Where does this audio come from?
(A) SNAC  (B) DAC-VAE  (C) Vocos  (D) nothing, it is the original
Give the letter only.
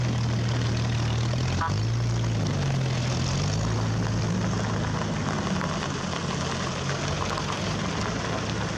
D